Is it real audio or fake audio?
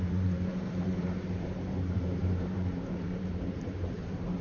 fake